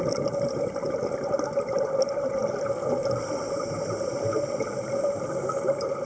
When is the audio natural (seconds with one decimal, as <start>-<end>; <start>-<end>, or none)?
0.0-6.0